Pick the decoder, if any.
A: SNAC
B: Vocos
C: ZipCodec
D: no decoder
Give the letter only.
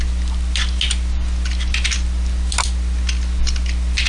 D